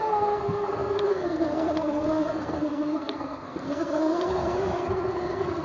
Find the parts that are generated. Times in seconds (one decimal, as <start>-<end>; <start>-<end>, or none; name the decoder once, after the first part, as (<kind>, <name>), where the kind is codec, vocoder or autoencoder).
0.0-5.6 (codec, SNAC)